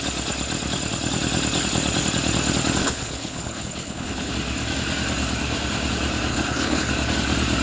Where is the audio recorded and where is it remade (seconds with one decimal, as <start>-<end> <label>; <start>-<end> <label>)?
0.0-2.8 recorded; 2.8-4.3 remade; 4.3-6.3 recorded; 6.3-6.9 remade; 6.9-7.6 recorded